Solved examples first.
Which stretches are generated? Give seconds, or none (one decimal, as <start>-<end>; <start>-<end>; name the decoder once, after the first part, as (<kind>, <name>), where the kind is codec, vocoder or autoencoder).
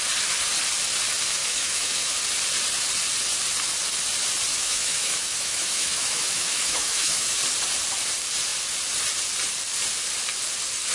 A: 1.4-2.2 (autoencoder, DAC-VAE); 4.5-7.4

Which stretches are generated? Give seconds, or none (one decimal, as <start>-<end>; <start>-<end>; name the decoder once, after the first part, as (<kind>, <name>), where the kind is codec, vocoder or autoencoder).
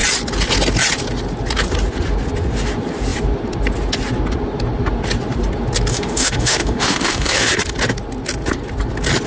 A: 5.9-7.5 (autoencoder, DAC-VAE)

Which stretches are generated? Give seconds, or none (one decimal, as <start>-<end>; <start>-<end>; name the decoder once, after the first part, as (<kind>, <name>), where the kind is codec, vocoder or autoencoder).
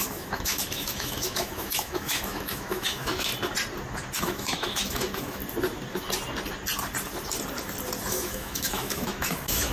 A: 0.0-3.3 (autoencoder, DAC-VAE); 4.2-5.4; 8.1-9.7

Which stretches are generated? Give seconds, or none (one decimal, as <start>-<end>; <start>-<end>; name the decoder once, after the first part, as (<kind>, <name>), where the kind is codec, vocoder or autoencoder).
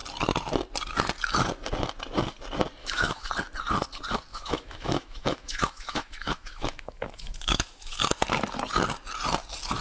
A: 2.8-3.3 (autoencoder, DAC-VAE); 4.3-8.0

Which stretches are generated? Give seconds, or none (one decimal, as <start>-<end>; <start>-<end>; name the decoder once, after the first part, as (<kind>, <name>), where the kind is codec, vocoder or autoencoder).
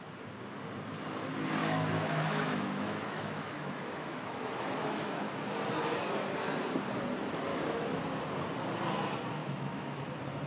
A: 1.6-5.3 (autoencoder, DAC-VAE); 7.5-8.0; 9.4-10.0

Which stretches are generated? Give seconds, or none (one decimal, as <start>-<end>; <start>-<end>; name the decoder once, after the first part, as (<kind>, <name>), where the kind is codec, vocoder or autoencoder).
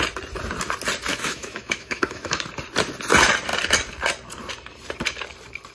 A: 1.1-2.4 (autoencoder, DAC-VAE)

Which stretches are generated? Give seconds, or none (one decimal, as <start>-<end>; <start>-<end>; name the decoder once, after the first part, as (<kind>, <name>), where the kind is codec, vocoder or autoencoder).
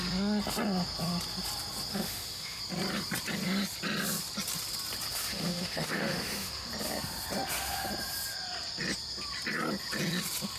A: 1.9-2.6 (autoencoder, DAC-VAE); 5.1-6.7